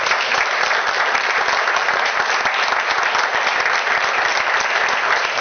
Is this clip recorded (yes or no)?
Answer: yes